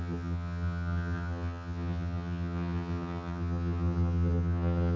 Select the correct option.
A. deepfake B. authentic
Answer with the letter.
A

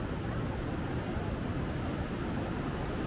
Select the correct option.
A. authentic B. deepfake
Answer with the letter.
A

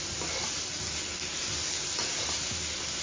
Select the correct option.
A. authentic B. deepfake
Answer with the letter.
A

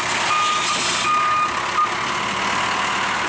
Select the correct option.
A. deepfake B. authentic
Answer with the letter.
B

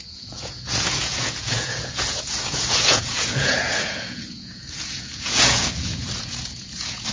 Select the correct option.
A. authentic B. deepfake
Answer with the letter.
B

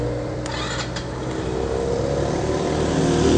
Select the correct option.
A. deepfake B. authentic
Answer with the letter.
B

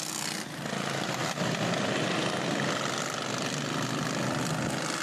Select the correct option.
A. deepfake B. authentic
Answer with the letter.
B